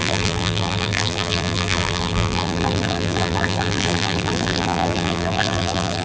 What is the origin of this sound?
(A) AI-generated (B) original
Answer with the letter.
A